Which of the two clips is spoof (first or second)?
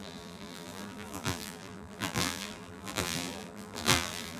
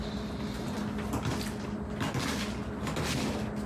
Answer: first